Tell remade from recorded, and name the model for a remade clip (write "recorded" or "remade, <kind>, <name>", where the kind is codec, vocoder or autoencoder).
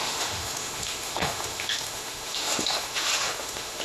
remade, autoencoder, DAC-VAE